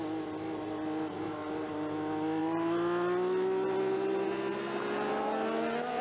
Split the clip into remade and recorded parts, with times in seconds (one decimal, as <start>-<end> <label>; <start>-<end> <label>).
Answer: 0.0-6.0 recorded